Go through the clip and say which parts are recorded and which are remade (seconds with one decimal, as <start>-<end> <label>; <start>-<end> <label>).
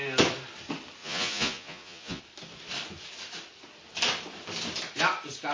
0.0-1.0 recorded; 1.0-2.2 remade; 2.2-5.5 recorded